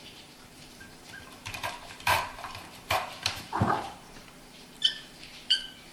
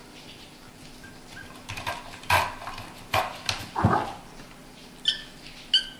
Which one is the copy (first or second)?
first